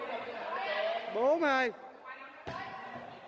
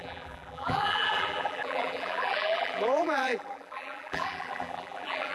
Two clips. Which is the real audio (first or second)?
first